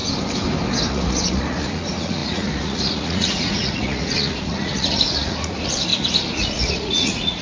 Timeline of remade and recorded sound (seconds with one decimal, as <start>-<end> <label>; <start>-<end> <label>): 0.0-0.9 recorded; 0.9-7.4 remade